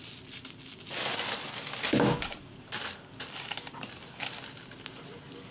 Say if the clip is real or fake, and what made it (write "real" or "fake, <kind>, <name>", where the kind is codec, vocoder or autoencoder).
real